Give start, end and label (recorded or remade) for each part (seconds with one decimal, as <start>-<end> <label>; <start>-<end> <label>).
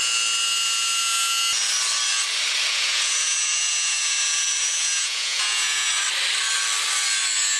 0.0-2.7 recorded; 2.7-5.9 remade; 5.9-7.6 recorded